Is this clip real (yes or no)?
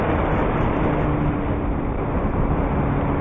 yes